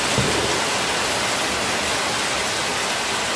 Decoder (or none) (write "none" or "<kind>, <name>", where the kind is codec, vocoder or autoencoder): none